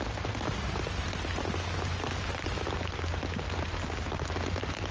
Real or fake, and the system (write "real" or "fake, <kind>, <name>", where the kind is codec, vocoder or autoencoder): real